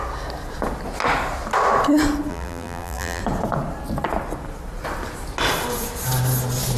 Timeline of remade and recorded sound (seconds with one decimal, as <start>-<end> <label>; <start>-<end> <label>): 0.0-2.3 recorded; 2.3-3.2 remade; 3.2-6.8 recorded

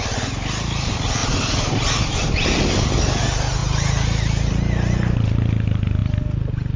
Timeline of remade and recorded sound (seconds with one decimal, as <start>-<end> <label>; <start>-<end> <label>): 0.0-1.2 recorded; 1.2-2.6 remade; 2.6-6.8 recorded